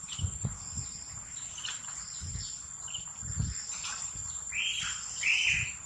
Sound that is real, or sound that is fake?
real